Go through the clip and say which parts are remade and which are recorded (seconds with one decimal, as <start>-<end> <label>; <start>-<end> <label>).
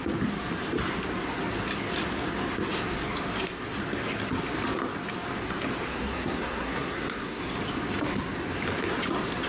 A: 0.0-5.9 recorded; 5.9-7.4 remade; 7.4-9.5 recorded